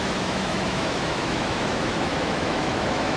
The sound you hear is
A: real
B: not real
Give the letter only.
B